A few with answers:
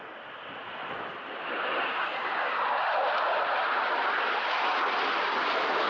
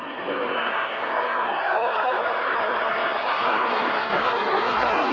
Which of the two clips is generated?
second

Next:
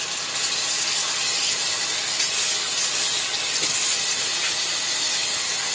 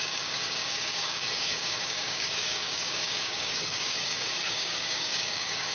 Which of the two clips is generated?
second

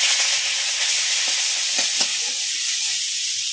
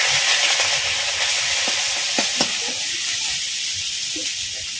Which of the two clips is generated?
first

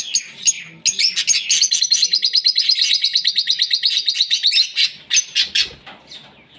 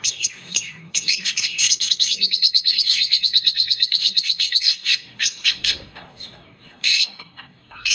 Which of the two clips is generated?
second